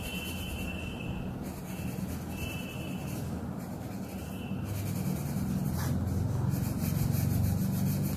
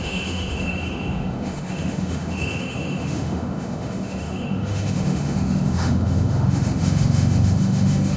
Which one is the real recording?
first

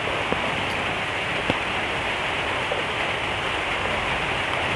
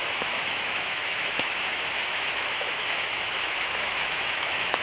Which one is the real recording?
first